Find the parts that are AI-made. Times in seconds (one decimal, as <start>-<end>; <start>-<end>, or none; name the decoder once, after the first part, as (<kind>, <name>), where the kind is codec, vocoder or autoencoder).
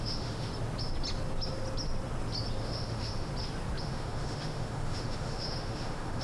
0.0-0.5 (autoencoder, DAC-VAE); 2.6-3.3; 3.8-6.2